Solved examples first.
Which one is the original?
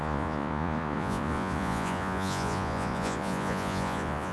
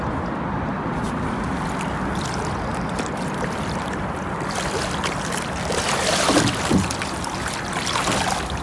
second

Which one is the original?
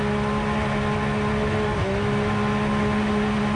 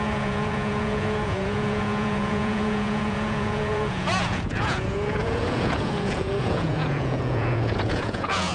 first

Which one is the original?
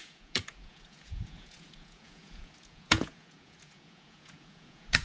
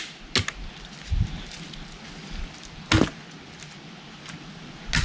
second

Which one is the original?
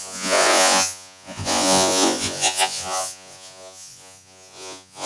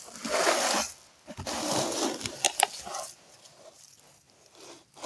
second